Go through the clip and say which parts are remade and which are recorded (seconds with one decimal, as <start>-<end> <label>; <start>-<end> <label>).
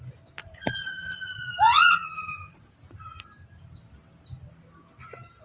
0.0-0.4 recorded; 0.4-2.7 remade; 2.7-5.4 recorded